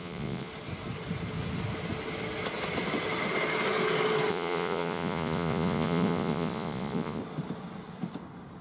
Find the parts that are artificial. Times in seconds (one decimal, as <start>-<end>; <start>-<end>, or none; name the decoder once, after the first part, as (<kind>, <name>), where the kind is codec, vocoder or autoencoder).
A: 0.0-0.5 (vocoder, Vocos); 4.3-7.2